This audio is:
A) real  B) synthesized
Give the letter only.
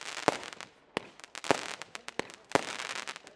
A